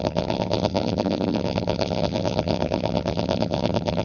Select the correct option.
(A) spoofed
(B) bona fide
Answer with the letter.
A